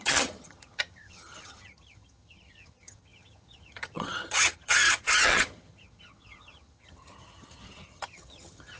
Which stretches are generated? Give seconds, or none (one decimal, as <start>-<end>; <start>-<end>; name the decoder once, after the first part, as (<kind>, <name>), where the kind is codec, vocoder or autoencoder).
0.0-8.8 (vocoder, HiFi-GAN)